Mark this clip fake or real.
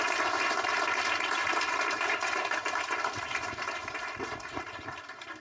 fake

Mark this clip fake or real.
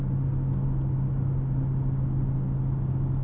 real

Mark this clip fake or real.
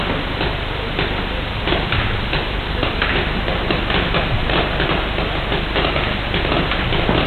real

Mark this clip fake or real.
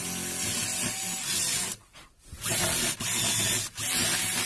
real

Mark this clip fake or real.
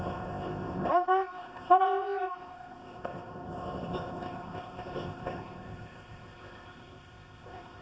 fake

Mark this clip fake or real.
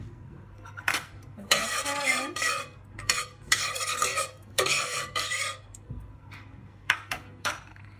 fake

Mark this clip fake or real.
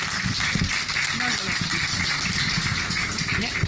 real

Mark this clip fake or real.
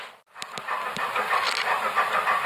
real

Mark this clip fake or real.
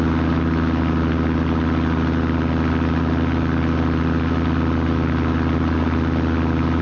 real